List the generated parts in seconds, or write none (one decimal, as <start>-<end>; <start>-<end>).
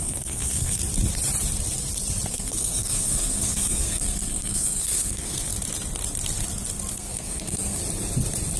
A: 0.0-0.8; 2.3-5.5; 6.9-7.8